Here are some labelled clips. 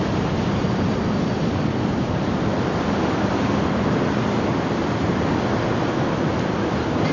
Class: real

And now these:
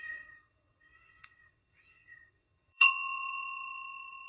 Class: fake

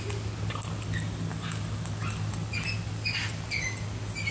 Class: real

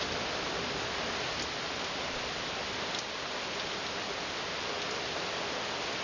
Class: real